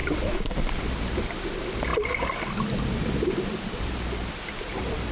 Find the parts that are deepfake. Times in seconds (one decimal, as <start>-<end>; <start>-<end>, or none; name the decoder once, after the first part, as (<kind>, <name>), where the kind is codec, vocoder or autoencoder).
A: none